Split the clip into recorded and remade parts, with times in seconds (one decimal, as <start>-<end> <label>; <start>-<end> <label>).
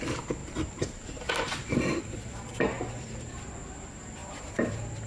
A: 0.0-0.4 recorded; 0.4-3.5 remade; 3.5-4.2 recorded; 4.2-5.1 remade